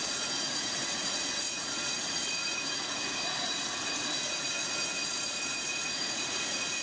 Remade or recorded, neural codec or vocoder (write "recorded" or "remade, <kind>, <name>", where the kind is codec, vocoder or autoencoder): remade, vocoder, Vocos